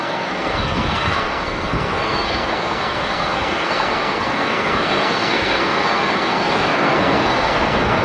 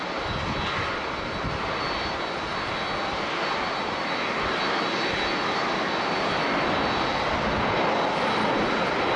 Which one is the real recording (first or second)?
second